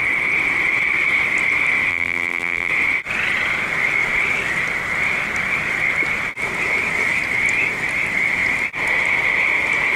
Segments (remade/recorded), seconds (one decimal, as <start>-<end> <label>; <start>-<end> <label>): 0.0-1.9 recorded; 1.9-2.7 remade; 2.7-10.0 recorded